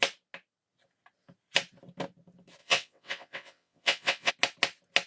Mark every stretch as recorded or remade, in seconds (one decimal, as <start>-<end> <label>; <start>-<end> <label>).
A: 0.0-2.6 recorded; 2.6-4.3 remade; 4.3-5.1 recorded

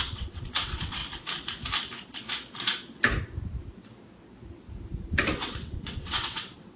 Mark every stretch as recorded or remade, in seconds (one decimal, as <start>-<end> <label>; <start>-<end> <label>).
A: 0.0-1.0 remade; 1.0-5.1 recorded; 5.1-6.8 remade

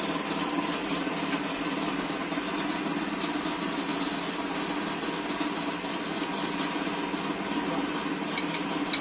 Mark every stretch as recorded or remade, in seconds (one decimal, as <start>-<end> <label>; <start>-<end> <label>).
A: 0.0-9.0 recorded

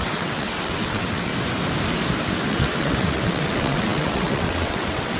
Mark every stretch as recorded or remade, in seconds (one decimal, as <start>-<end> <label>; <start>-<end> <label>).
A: 0.0-1.3 remade; 1.3-2.5 recorded; 2.5-5.2 remade

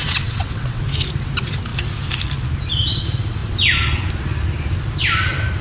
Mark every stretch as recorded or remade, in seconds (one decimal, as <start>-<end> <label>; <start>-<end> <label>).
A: 0.0-0.8 remade; 0.8-5.6 recorded

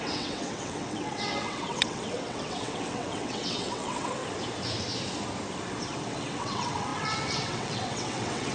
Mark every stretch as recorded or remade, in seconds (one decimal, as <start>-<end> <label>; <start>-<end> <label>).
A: 0.0-4.2 remade; 4.2-6.1 recorded; 6.1-8.5 remade

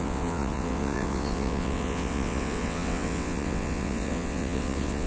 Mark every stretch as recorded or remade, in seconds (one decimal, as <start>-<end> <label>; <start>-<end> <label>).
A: 0.0-5.1 remade